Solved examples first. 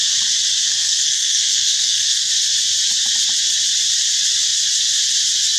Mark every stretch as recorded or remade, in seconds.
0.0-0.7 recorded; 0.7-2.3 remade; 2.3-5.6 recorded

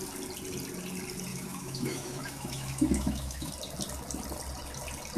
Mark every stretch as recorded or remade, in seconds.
0.0-1.3 recorded; 1.3-3.5 remade; 3.5-5.2 recorded

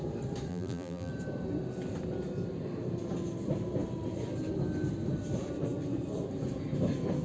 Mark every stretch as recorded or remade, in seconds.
0.0-0.5 recorded; 0.5-1.1 remade; 1.1-7.2 recorded

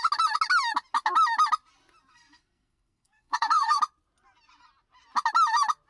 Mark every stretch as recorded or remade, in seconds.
0.0-2.1 recorded; 2.1-3.8 remade; 3.8-5.9 recorded

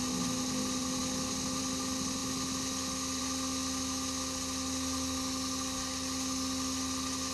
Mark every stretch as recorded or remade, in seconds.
0.0-7.3 recorded

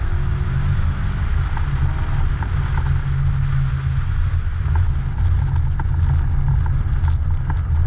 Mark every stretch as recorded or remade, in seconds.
0.0-7.9 recorded